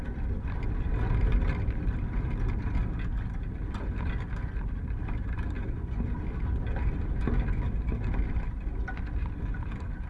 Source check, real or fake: real